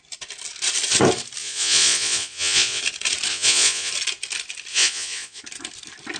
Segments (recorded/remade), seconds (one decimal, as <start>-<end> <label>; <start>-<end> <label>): 0.0-1.4 recorded; 1.4-2.8 remade; 2.8-3.3 recorded; 3.3-3.9 remade; 3.9-4.7 recorded; 4.7-5.4 remade; 5.4-6.2 recorded